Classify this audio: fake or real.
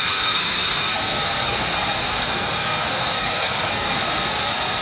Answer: fake